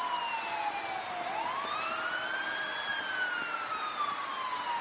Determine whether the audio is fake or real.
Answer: real